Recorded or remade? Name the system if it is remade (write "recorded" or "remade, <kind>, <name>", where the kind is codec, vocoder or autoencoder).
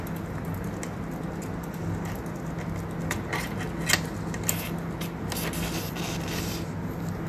recorded